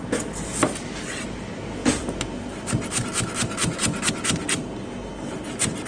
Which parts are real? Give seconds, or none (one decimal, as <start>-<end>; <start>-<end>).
0.0-5.9